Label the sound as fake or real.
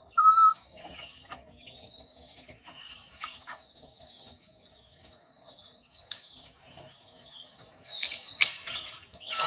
fake